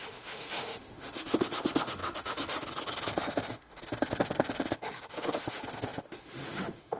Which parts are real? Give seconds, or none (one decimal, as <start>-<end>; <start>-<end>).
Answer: none